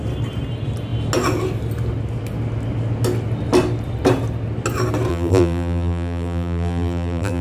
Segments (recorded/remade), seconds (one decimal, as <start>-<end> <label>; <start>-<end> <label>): 0.0-5.1 recorded; 5.1-7.4 remade